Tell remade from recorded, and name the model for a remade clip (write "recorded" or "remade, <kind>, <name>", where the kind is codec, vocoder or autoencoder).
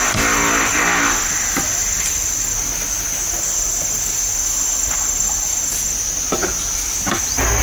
recorded